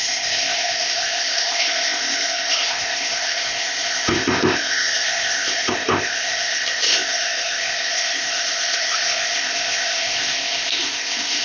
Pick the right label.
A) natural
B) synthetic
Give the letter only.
B